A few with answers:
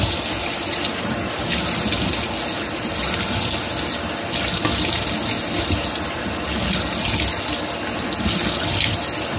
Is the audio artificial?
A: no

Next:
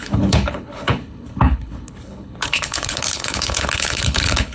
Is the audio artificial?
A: yes